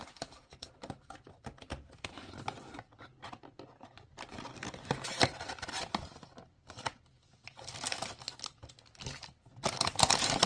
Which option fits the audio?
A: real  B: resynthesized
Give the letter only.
A